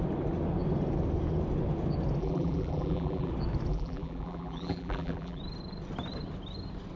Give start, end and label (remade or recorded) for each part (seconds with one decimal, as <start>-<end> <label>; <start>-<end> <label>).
0.0-2.2 recorded; 2.2-3.3 remade; 3.3-3.7 recorded; 3.7-5.4 remade; 5.4-7.0 recorded